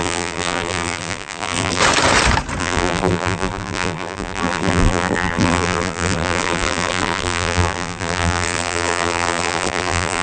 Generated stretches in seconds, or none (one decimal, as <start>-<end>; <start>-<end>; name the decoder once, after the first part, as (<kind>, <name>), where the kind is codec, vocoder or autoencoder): 0.0-1.8 (vocoder, BigVGAN v2); 2.6-10.2